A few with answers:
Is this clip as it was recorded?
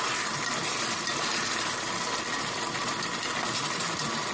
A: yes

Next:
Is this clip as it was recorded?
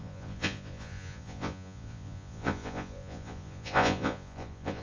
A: no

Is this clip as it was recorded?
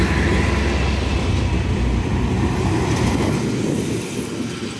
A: yes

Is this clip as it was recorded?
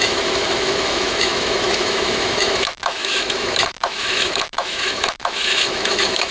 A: no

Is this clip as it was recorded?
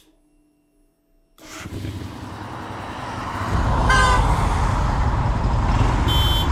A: yes